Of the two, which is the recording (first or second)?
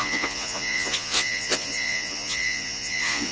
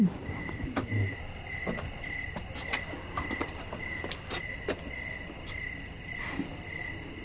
second